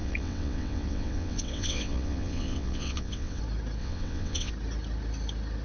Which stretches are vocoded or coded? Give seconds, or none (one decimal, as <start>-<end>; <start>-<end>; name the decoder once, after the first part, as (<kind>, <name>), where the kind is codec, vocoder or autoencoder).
0.0-3.4 (vocoder, WaveNeXt); 3.8-4.5